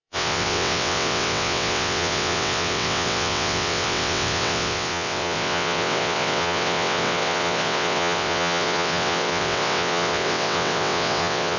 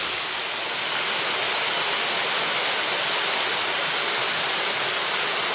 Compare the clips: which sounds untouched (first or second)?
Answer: second